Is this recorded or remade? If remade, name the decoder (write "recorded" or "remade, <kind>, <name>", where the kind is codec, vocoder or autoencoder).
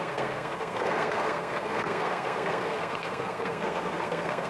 remade, codec, SNAC